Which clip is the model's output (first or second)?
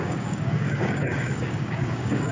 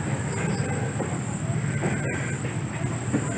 first